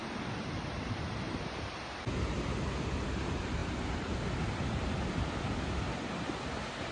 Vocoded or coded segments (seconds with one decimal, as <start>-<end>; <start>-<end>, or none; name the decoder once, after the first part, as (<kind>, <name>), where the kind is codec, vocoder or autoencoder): none